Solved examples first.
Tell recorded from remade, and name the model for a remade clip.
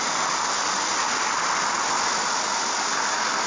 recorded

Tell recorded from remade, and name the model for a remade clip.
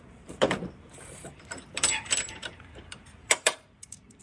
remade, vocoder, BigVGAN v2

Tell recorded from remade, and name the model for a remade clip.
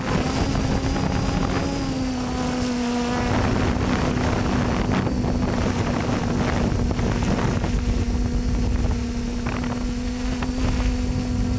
recorded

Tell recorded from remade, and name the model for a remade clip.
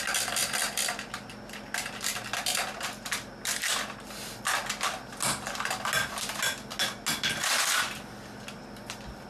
recorded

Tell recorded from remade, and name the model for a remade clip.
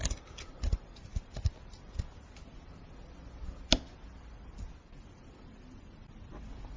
recorded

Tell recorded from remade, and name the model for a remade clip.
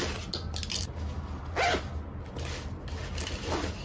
recorded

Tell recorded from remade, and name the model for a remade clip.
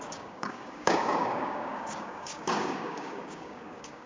remade, codec, DAC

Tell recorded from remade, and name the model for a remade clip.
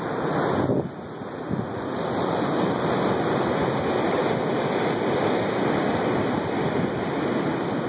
recorded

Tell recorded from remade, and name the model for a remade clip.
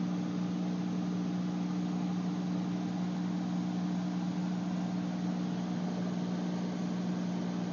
recorded